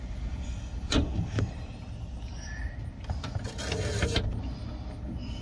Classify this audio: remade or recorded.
recorded